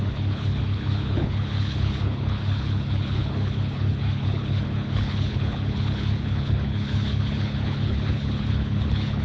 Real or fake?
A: fake